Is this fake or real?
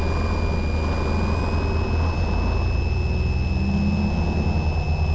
real